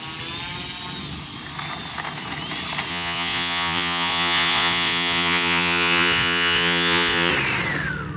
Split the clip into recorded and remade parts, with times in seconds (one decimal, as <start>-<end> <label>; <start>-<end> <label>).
0.0-2.9 recorded; 2.9-7.3 remade; 7.3-8.2 recorded

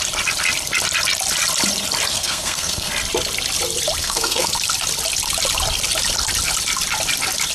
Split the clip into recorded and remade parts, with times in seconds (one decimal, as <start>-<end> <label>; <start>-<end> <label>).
0.0-2.1 recorded; 2.1-2.9 remade; 2.9-4.0 recorded; 4.0-4.5 remade; 4.5-7.5 recorded

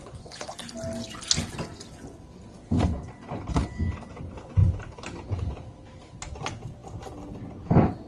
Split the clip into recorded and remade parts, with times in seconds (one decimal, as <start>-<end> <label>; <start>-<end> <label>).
0.0-0.7 remade; 0.7-8.1 recorded

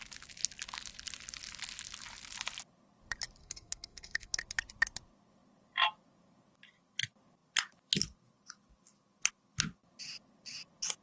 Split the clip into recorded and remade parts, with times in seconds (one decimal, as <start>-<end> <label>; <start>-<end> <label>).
0.0-3.4 recorded; 3.4-4.4 remade; 4.4-11.0 recorded

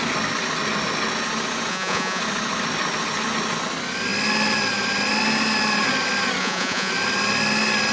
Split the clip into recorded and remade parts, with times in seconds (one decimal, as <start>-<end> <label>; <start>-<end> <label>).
0.0-1.7 recorded; 1.7-2.2 remade; 2.2-6.4 recorded; 6.4-6.9 remade; 6.9-7.9 recorded